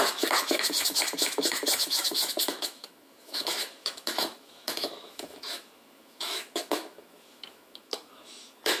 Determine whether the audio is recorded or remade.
remade